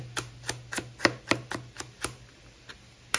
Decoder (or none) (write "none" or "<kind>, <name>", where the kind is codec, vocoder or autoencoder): none